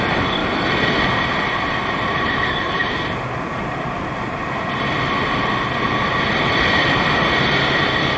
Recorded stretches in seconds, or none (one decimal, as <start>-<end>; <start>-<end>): 0.0-8.2